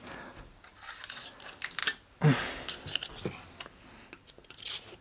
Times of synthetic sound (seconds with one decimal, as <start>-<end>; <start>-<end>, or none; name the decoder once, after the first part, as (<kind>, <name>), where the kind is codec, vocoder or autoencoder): none